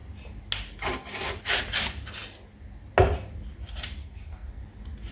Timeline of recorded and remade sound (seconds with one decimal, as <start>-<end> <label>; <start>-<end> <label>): 0.0-4.0 recorded; 4.0-4.6 remade; 4.6-5.1 recorded